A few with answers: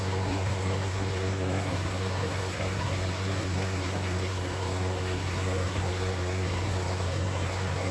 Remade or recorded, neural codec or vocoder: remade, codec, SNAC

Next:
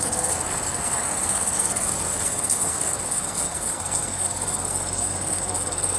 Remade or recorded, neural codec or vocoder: remade, codec, SNAC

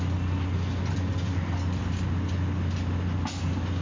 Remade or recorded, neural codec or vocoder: recorded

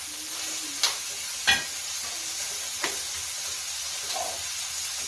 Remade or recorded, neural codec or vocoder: recorded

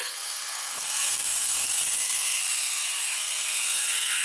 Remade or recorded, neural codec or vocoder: remade, codec, SNAC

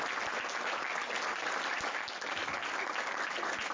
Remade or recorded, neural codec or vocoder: recorded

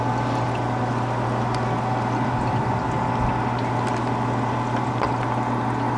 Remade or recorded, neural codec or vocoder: recorded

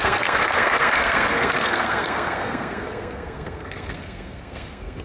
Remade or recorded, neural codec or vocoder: remade, codec, SNAC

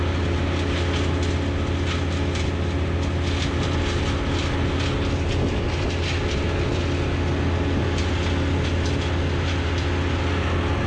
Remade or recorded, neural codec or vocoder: recorded